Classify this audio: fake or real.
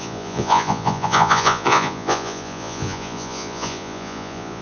fake